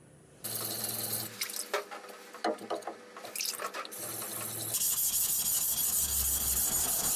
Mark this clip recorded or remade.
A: recorded